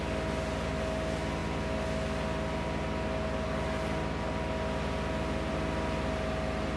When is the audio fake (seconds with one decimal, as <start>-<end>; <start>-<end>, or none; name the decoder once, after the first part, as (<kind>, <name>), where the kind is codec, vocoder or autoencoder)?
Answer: none